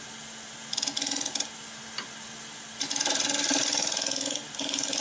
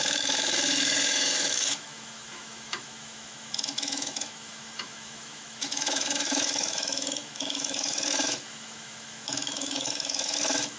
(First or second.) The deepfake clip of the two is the second